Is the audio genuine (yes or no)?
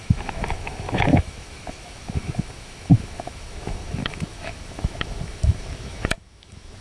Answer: no